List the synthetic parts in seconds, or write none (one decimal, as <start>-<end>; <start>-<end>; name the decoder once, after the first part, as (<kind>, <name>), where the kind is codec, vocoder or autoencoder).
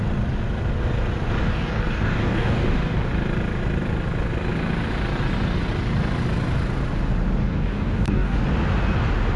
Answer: 1.4-3.1 (codec, DAC); 7.4-8.4